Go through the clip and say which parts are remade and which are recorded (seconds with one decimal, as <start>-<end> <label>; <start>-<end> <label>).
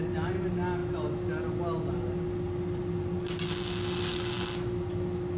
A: 0.0-5.4 recorded